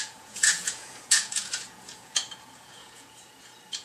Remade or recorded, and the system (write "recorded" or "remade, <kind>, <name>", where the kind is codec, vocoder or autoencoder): remade, vocoder, Vocos